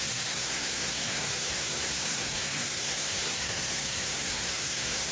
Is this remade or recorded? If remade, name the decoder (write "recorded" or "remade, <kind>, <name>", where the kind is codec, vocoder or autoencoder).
remade, codec, SNAC